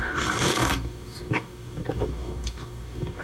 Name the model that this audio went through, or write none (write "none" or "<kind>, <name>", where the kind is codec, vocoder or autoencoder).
codec, DAC